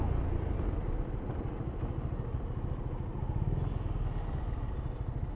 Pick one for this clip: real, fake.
real